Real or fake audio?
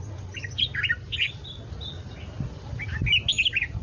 real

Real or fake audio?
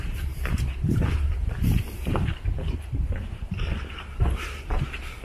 fake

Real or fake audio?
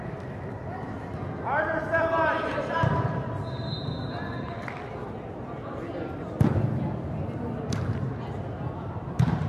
real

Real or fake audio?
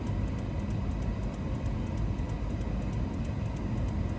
real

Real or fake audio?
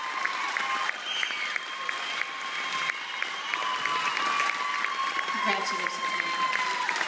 real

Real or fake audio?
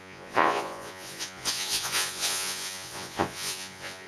fake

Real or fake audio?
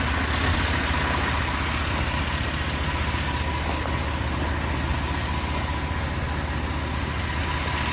real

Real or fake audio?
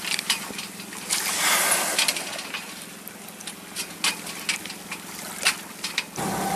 real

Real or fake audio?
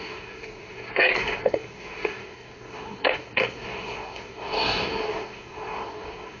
fake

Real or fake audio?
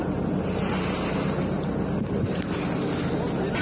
real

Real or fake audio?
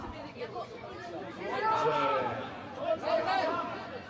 fake